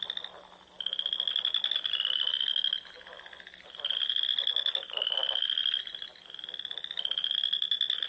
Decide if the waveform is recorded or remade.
recorded